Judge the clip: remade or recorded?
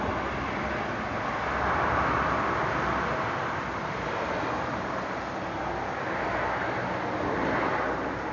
recorded